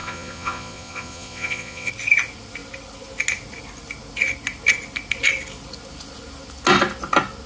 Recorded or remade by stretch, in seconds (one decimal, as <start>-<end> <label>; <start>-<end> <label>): 0.0-1.9 remade; 1.9-7.5 recorded